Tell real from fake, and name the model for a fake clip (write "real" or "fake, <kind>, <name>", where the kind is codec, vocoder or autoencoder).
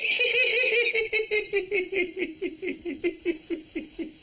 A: real